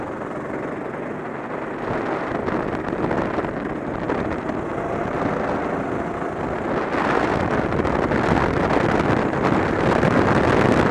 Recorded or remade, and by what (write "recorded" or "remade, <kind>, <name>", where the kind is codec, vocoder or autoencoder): recorded